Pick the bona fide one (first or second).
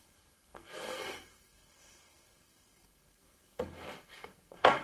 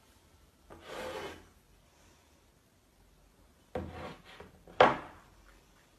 second